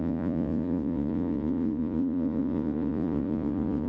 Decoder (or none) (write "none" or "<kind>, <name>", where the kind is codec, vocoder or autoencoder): vocoder, Vocos